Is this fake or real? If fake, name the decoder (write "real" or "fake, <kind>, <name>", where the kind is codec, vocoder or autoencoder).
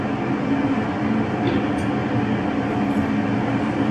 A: real